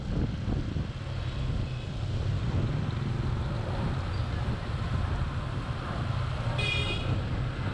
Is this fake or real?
real